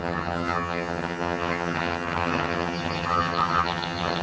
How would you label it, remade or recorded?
remade